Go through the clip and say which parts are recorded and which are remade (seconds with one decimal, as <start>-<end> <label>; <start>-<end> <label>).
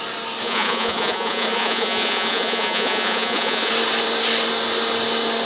0.0-0.4 recorded; 0.4-3.7 remade; 3.7-5.5 recorded